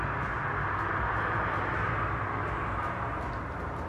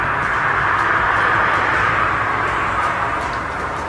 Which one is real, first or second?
first